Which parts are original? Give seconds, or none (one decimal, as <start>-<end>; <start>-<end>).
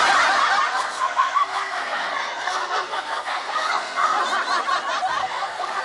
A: 0.0-0.7; 4.2-5.2